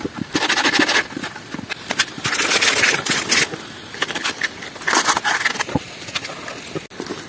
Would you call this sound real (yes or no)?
yes